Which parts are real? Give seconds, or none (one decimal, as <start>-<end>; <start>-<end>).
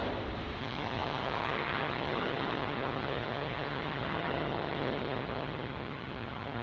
0.0-0.6